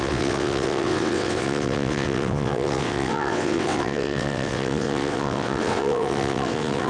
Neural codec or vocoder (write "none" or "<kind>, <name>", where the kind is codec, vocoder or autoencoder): vocoder, WaveNeXt